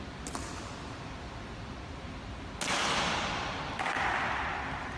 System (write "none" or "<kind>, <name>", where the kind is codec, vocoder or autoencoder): none